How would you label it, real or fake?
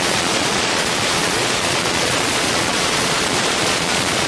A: fake